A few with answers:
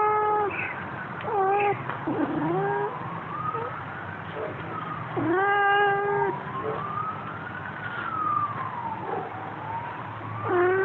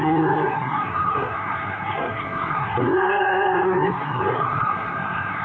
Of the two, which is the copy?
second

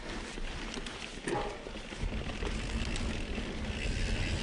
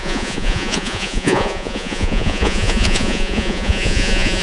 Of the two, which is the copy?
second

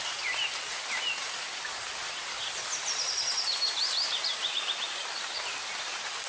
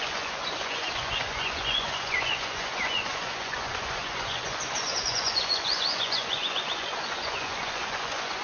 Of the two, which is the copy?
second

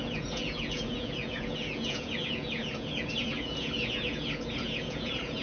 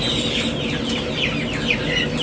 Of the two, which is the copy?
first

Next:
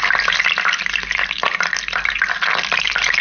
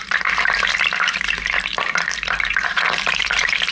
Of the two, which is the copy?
second